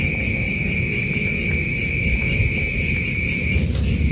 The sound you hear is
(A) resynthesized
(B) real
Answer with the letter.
B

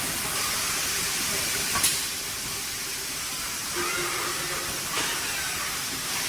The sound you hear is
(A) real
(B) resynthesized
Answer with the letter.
A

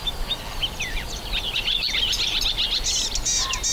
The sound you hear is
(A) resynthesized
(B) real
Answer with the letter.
B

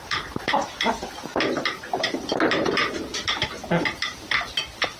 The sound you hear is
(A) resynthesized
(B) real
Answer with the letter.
B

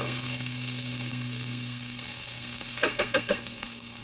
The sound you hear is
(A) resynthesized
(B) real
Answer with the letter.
A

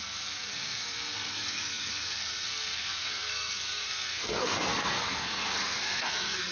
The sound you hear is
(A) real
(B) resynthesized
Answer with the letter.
B